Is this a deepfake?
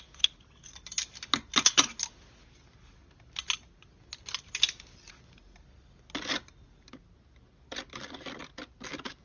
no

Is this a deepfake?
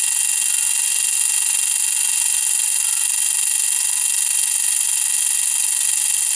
no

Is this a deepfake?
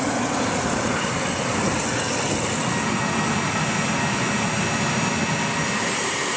no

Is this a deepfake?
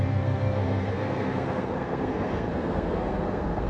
yes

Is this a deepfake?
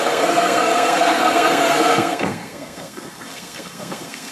yes